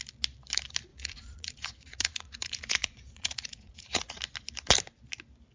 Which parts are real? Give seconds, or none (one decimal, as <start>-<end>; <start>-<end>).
0.0-0.9; 4.2-5.5